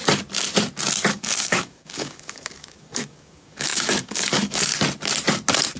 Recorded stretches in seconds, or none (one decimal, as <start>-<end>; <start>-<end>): 0.0-1.1; 4.7-5.8